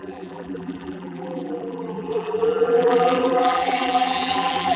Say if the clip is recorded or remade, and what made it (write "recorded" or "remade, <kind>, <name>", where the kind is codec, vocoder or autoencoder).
remade, vocoder, BigVGAN v2